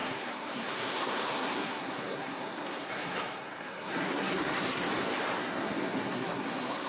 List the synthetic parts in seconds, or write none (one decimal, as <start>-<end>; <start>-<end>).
0.0-4.9; 5.4-6.9